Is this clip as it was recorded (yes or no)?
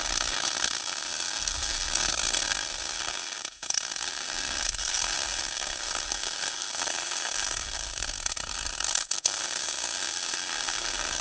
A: no